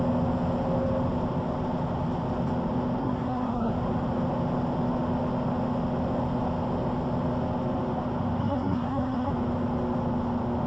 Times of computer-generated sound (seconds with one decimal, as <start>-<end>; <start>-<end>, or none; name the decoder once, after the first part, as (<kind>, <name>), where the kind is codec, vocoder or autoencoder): 3.0-3.7 (codec, SNAC); 8.4-9.3